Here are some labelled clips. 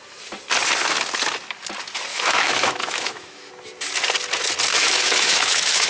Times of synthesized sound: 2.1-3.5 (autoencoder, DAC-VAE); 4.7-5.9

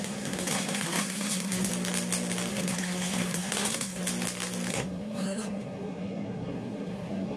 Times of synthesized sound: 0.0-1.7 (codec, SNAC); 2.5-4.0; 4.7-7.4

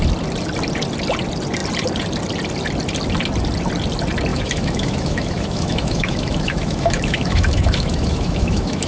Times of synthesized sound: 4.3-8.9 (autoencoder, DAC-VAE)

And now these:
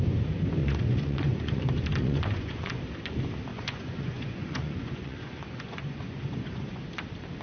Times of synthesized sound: 0.6-1.6 (vocoder, Vocos); 2.0-2.8; 3.5-6.8

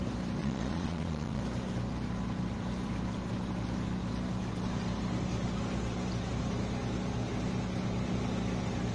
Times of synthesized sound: 0.4-1.4 (vocoder, Vocos)

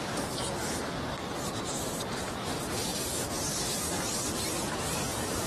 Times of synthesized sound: 0.6-2.3 (vocoder, BigVGAN v2); 2.9-3.5

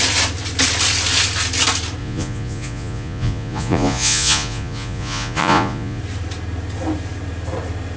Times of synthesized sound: 2.0-6.0 (vocoder, Vocos)